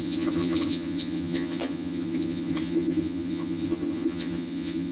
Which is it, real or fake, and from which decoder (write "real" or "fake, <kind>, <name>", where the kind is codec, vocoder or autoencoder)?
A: fake, vocoder, HiFi-GAN